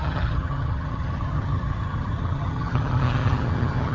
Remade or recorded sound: remade